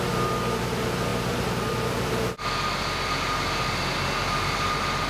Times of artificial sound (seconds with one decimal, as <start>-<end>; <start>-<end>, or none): none